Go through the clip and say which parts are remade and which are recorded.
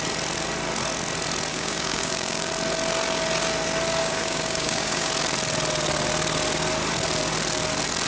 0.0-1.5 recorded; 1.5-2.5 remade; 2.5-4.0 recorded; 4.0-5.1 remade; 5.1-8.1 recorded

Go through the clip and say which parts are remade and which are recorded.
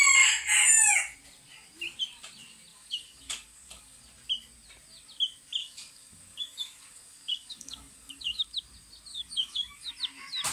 0.0-2.7 recorded; 2.7-4.0 remade; 4.0-5.6 recorded; 5.6-8.4 remade; 8.4-9.1 recorded; 9.1-9.9 remade; 9.9-10.5 recorded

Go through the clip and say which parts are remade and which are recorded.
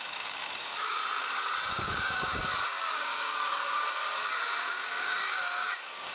0.0-1.0 remade; 1.0-1.7 recorded; 1.7-2.4 remade; 2.4-3.0 recorded; 3.0-6.1 remade